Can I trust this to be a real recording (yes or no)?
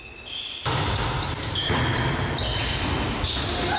yes